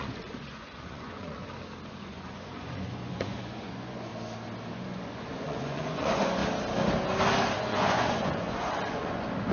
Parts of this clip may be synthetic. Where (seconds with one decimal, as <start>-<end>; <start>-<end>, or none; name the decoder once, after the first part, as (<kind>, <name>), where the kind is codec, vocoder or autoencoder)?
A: 0.0-1.4 (vocoder, Vocos); 1.9-4.1; 4.7-6.4; 7.6-9.5